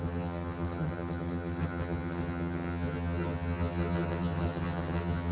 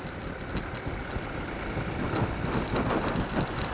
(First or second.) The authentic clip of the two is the second